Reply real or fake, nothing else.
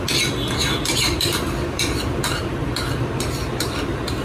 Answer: real